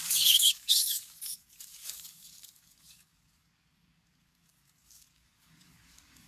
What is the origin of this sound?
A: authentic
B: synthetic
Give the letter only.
B